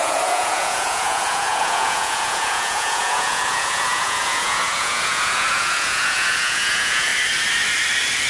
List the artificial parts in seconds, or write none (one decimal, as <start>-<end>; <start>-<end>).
0.0-7.1